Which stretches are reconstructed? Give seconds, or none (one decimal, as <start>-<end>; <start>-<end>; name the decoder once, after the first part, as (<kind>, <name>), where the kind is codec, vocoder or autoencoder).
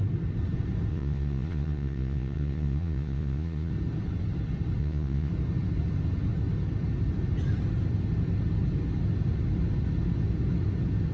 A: 0.9-3.7 (vocoder, Vocos); 4.8-5.3